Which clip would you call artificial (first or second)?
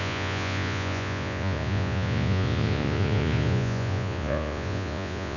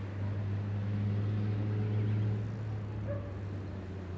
first